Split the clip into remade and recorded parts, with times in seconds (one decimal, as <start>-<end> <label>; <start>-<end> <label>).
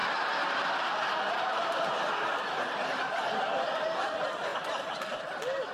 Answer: 0.0-5.7 recorded